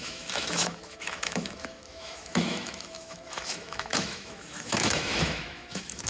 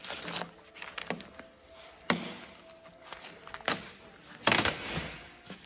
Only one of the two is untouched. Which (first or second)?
second